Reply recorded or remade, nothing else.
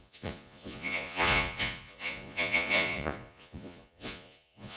remade